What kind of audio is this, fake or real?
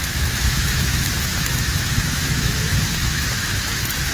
fake